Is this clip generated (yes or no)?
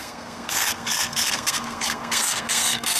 yes